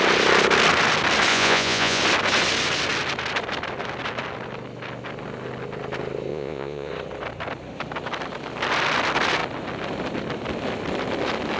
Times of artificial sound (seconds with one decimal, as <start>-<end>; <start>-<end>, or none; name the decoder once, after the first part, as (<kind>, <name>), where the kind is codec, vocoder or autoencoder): 1.3-2.0 (vocoder, Vocos); 6.3-6.9